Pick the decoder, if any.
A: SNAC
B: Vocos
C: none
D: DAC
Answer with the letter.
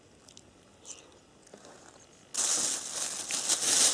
C